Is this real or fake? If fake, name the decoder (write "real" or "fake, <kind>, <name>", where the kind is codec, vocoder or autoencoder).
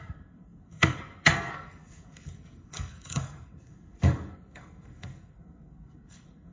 fake, codec, SNAC